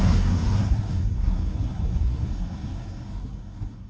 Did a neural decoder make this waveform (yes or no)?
yes